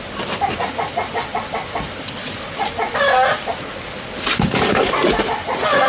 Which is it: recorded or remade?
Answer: recorded